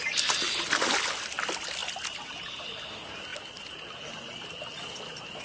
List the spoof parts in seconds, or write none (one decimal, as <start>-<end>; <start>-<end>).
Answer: none